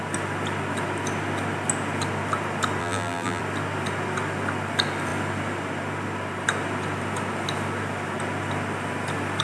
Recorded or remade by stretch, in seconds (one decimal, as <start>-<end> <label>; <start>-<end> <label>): 0.0-2.8 recorded; 2.8-3.4 remade; 3.4-9.4 recorded